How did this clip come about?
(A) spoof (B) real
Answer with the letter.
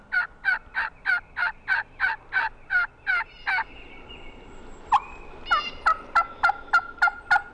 B